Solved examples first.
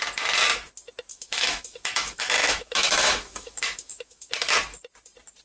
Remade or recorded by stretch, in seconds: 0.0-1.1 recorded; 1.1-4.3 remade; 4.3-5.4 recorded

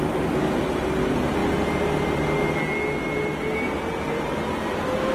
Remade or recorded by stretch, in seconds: 0.0-5.1 recorded

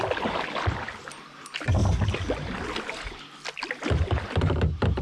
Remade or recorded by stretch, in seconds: 0.0-5.0 recorded